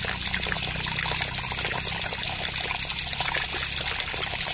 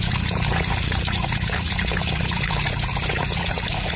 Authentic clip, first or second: first